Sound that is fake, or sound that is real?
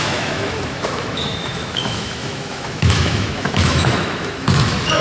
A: fake